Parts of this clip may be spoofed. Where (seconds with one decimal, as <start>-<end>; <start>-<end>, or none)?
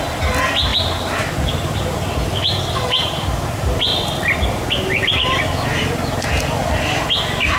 0.7-3.1; 3.9-4.4